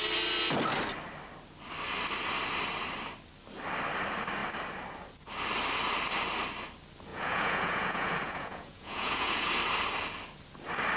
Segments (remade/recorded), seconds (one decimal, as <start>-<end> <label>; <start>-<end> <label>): 0.0-7.1 recorded; 7.1-9.5 remade; 9.5-11.0 recorded